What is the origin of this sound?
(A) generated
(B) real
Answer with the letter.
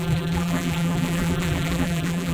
A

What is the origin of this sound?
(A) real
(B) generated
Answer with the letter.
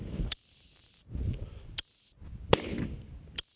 A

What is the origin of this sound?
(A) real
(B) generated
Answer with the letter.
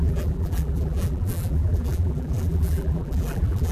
B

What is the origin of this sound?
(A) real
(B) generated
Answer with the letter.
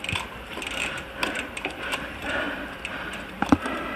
B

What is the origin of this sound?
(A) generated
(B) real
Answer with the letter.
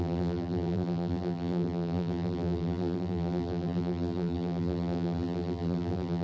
A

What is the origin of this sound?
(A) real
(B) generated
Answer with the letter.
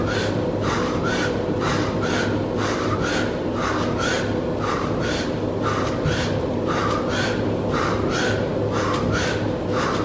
A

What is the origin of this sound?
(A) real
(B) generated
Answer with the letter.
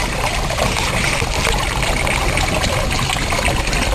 A